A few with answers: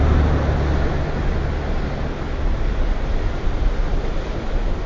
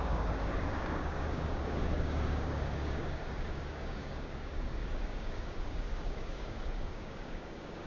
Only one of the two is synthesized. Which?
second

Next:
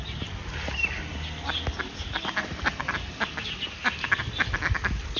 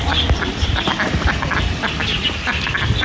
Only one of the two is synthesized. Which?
second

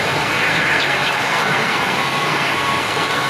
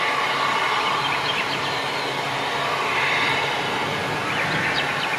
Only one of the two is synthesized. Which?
first